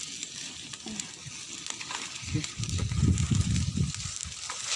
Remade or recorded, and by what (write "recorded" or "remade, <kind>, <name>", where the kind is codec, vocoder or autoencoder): recorded